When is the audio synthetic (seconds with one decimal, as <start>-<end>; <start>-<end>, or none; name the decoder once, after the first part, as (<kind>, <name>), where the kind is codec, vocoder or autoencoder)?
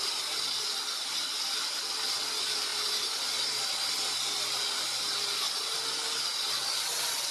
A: none